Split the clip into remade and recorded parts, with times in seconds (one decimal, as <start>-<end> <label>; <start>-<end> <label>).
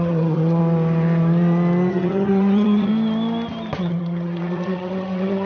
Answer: 0.0-0.6 remade; 0.6-1.9 recorded; 1.9-2.9 remade; 2.9-3.8 recorded; 3.8-5.5 remade